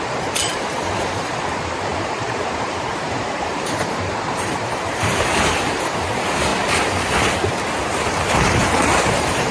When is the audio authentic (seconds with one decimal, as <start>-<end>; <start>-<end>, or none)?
6.5-9.1